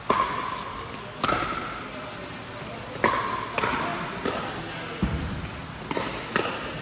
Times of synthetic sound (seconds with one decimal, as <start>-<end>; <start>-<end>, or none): 0.6-1.2